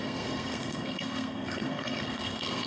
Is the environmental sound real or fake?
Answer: fake